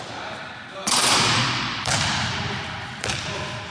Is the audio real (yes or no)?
no